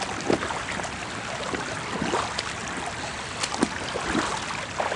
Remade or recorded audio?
recorded